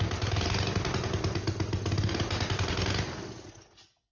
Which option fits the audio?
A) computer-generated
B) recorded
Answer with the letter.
B